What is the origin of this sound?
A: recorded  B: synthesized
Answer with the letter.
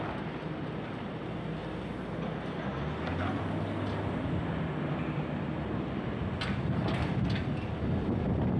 A